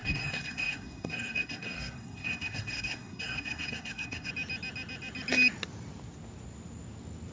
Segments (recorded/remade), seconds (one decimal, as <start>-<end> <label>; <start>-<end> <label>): 0.0-4.3 remade; 4.3-7.3 recorded